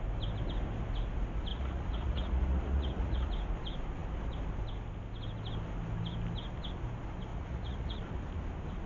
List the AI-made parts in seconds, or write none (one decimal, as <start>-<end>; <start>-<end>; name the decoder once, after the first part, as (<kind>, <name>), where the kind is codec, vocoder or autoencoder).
1.5-3.3 (vocoder, Vocos); 7.3-8.0